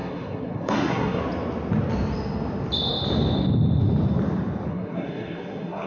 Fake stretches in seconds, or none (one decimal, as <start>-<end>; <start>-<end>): 0.0-1.2; 4.7-5.9